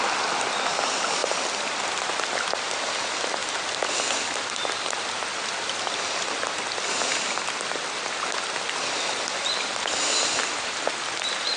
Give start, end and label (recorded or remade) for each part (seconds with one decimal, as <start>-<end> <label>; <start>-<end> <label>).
0.0-11.6 recorded